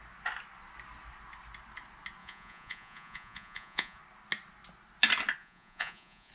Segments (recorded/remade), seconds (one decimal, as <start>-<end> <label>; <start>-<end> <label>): 0.0-2.2 recorded; 2.2-4.0 remade; 4.0-5.4 recorded; 5.4-6.3 remade